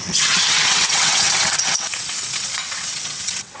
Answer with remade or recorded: remade